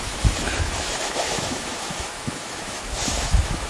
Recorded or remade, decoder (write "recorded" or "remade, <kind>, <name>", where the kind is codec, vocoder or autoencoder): remade, autoencoder, DAC-VAE